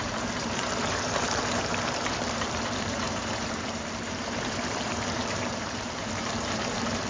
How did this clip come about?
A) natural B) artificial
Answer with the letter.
B